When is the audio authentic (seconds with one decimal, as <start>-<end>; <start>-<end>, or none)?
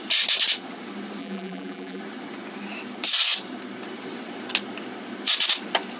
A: 0.0-1.2; 2.0-6.0